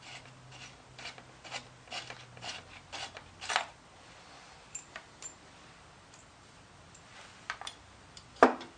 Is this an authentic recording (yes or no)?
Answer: yes